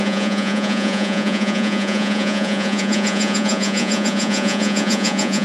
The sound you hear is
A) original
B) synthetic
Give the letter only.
B